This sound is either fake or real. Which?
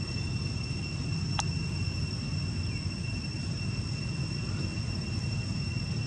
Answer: real